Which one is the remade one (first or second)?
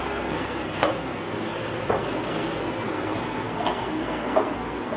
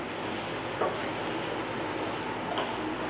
first